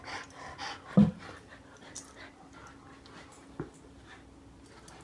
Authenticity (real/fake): real